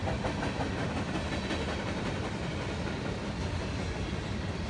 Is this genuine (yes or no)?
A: yes